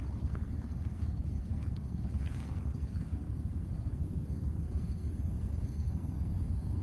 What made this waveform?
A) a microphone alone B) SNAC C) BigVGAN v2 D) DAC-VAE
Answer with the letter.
B